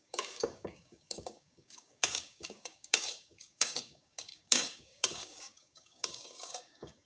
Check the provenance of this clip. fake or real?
fake